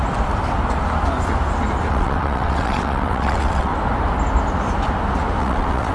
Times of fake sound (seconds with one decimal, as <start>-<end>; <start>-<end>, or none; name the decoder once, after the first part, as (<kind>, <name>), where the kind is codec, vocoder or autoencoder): 1.9-3.7 (vocoder, WaveNeXt); 5.4-5.9